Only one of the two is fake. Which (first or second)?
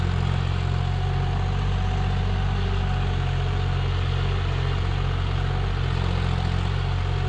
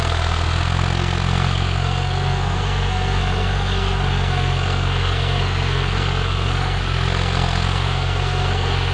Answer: second